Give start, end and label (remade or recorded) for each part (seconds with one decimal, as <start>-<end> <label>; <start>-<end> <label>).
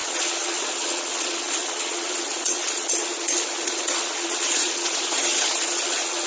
0.0-6.3 remade